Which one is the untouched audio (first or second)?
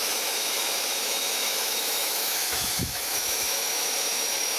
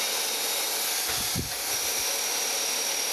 second